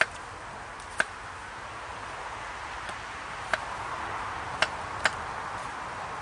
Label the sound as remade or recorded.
recorded